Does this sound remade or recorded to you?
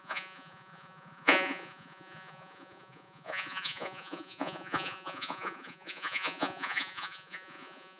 remade